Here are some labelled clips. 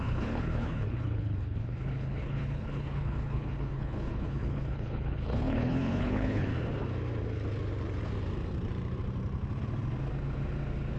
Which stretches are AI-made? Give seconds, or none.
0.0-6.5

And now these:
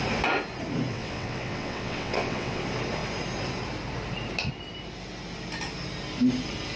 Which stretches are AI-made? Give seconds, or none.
0.9-2.6